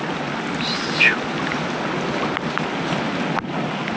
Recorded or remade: recorded